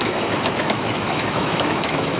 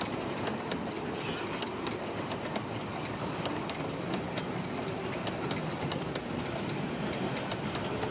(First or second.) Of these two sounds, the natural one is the second